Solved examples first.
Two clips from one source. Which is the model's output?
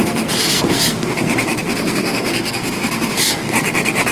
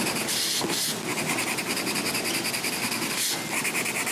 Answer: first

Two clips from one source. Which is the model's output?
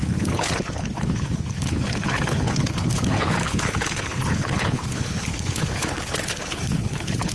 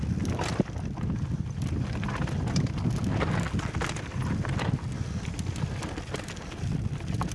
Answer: first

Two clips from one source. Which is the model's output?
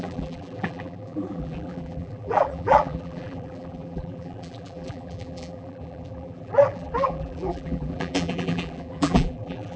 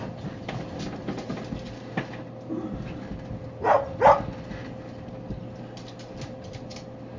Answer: first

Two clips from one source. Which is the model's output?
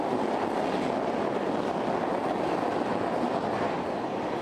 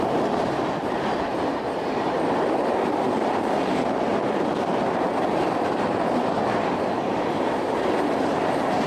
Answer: second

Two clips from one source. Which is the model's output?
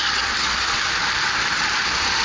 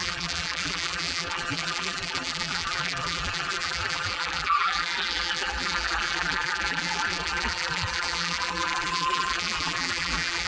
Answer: second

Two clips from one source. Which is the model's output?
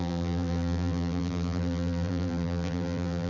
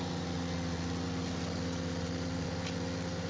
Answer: first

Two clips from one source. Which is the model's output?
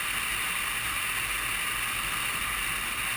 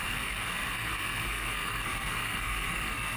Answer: second